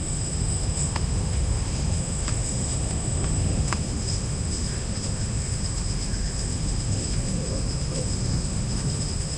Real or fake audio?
fake